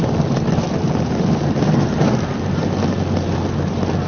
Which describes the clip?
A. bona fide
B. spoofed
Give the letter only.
A